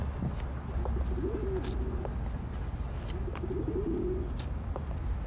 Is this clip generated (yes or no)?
no